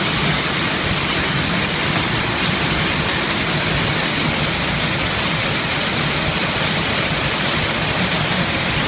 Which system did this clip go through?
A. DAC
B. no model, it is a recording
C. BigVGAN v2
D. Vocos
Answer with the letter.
B